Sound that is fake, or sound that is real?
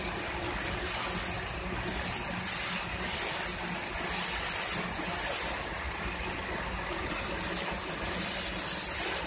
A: real